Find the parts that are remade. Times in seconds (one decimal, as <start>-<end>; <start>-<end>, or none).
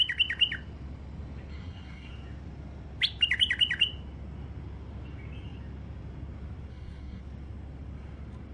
1.5-2.1; 6.7-7.2